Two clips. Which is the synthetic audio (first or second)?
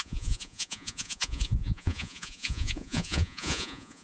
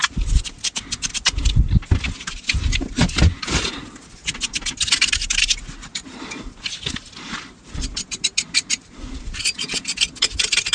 first